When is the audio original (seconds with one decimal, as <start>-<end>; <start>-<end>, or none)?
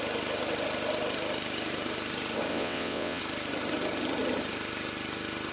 0.0-2.5; 3.2-5.5